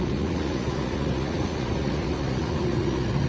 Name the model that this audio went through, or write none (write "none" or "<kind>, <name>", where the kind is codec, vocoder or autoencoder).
vocoder, Vocos